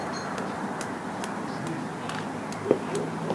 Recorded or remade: recorded